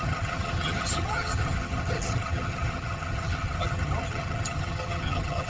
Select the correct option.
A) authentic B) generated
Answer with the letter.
B